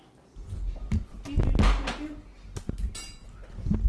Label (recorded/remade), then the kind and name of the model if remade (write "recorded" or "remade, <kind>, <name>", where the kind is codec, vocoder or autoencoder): recorded